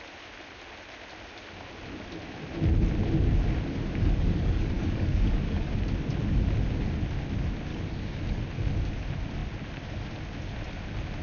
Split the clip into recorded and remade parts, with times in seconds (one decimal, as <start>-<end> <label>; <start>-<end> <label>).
0.0-3.8 recorded; 3.8-5.7 remade; 5.7-7.7 recorded; 7.7-8.4 remade; 8.4-11.2 recorded